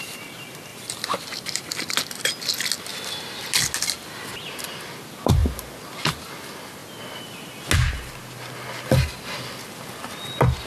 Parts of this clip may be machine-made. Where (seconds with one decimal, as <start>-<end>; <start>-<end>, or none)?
0.7-1.9; 2.9-3.4